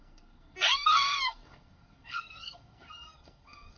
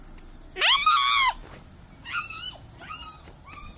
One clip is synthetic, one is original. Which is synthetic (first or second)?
first